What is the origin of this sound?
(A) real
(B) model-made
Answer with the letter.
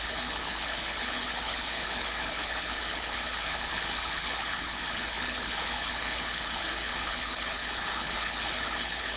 B